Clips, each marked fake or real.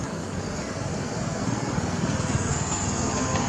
fake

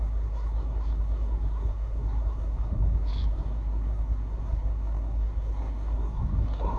fake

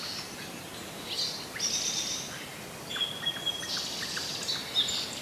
real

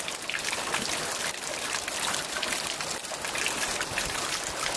real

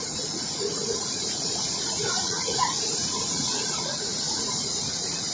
fake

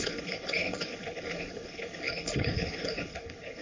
fake